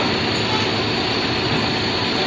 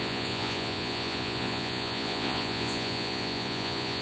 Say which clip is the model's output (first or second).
second